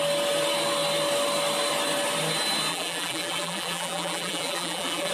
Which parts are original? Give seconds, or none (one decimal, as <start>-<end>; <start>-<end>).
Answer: 0.0-2.7